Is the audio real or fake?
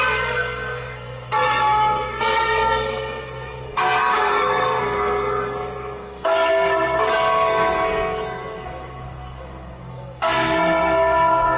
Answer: fake